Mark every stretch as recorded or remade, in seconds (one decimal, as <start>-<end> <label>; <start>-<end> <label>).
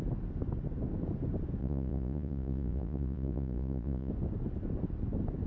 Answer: 0.0-1.6 recorded; 1.6-4.1 remade; 4.1-5.5 recorded